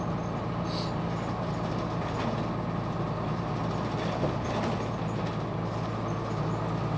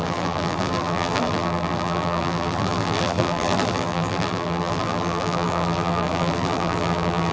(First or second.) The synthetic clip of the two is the second